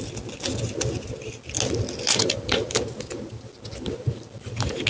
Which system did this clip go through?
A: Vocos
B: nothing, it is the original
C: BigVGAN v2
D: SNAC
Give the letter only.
B